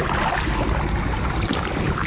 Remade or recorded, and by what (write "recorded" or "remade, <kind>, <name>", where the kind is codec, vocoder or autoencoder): recorded